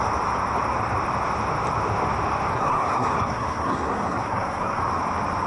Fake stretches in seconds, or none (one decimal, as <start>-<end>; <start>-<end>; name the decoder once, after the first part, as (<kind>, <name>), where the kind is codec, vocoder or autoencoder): 2.5-4.8 (codec, SNAC)